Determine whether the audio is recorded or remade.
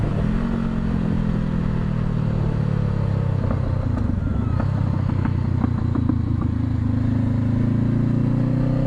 recorded